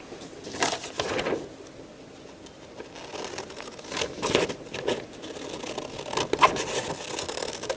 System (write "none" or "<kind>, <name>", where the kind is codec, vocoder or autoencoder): none